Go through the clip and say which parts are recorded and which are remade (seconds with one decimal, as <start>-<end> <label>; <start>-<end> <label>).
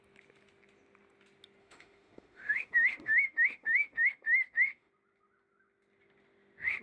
0.0-1.6 recorded; 1.6-4.9 remade; 4.9-6.8 recorded